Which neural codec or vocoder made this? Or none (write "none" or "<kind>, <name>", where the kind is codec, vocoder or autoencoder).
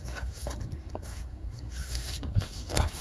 codec, SNAC